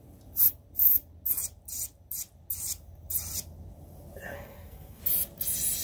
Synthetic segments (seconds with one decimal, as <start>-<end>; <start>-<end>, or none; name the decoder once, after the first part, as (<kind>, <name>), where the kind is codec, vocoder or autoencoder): 4.3-5.0 (codec, SNAC)